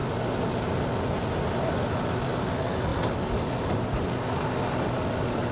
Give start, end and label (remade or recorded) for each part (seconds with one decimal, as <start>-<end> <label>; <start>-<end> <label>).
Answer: 0.0-5.5 recorded